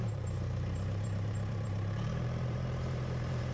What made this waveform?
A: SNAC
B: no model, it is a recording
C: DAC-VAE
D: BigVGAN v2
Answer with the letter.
D